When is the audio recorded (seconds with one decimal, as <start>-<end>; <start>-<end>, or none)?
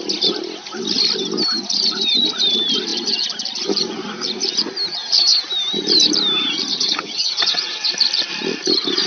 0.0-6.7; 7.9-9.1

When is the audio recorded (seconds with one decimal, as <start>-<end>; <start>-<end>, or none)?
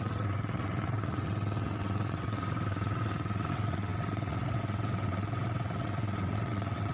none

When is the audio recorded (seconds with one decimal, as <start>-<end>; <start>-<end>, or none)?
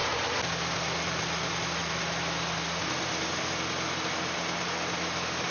0.0-5.5